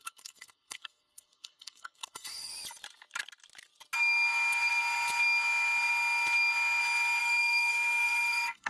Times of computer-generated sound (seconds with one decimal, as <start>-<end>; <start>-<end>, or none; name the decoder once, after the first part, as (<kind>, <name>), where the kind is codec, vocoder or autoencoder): 0.0-2.5 (codec, SNAC); 7.2-8.7